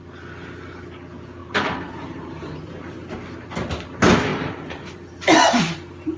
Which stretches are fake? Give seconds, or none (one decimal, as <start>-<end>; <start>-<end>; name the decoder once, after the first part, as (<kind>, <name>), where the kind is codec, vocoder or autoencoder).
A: 1.4-3.1 (vocoder, BigVGAN v2); 4.3-4.8